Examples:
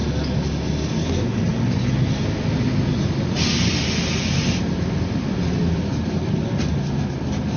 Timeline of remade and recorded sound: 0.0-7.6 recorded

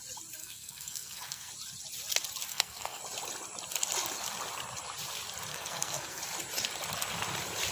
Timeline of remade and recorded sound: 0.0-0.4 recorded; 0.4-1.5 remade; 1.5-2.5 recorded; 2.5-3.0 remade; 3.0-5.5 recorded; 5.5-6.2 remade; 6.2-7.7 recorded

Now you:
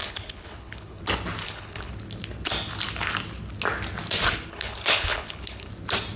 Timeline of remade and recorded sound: 0.0-1.0 remade; 1.0-1.4 recorded; 1.4-1.9 remade; 1.9-4.5 recorded; 4.5-5.7 remade; 5.7-6.2 recorded

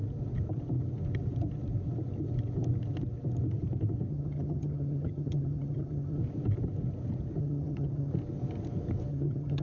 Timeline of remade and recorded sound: 0.0-4.1 recorded; 4.1-6.2 remade; 6.2-7.4 recorded; 7.4-8.1 remade; 8.1-9.1 recorded; 9.1-9.6 remade

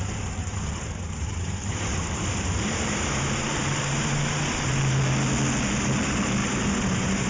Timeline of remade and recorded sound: 0.0-0.4 recorded; 0.4-4.8 remade; 4.8-6.4 recorded; 6.4-7.3 remade